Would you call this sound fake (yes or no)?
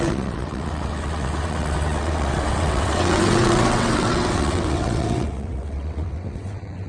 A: yes